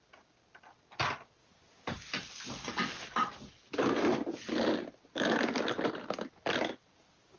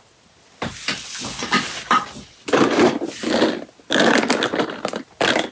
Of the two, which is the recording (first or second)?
first